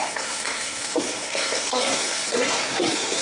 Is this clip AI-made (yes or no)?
yes